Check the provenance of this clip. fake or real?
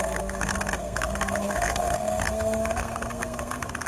fake